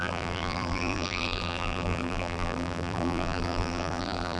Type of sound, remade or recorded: remade